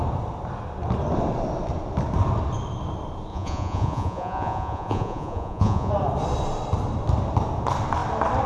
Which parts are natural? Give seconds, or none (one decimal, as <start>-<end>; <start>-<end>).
0.0-3.3; 5.9-8.5